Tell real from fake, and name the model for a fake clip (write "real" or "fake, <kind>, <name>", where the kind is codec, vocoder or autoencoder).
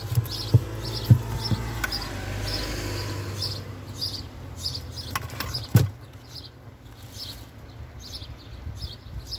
real